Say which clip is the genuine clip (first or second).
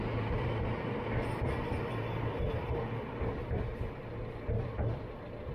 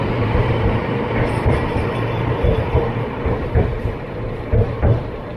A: first